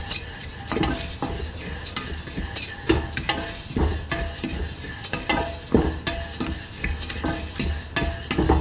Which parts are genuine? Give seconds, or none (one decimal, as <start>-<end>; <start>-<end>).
0.0-8.6